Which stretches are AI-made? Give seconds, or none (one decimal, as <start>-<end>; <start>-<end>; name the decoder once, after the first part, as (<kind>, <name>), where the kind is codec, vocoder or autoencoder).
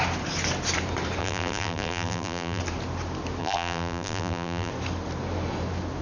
1.2-2.6 (vocoder, BigVGAN v2); 3.4-4.7